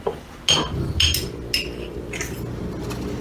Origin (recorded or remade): recorded